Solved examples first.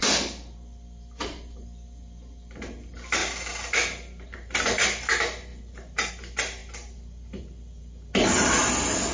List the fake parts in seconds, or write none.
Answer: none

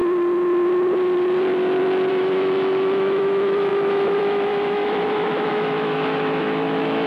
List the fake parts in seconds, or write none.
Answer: 2.1-7.1 (autoencoder, DAC-VAE)

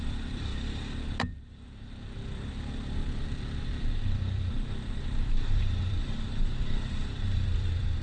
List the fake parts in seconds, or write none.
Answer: 0.0-0.5 (vocoder, BigVGAN v2); 1.4-8.0

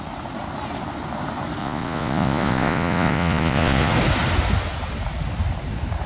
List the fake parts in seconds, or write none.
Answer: 1.6-3.9 (vocoder, Vocos)

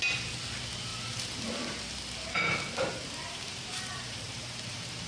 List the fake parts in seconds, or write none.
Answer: 0.9-1.8 (vocoder, BigVGAN v2); 2.9-5.1

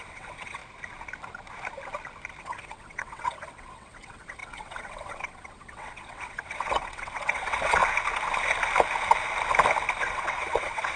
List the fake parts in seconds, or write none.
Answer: 0.0-0.6 (vocoder, WaveNeXt); 2.4-7.8; 10.0-11.0